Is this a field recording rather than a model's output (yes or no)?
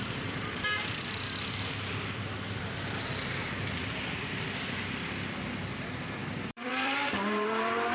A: no